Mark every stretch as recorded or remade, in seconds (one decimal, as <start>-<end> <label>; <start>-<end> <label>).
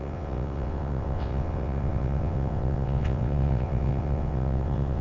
0.0-5.0 remade